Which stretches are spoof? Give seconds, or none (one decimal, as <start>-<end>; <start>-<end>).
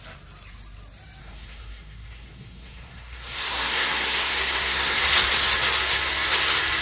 1.2-5.2